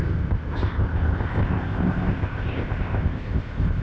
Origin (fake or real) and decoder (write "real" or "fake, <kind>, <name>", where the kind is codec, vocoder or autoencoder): fake, codec, ZipCodec